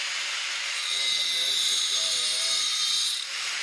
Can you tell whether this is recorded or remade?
recorded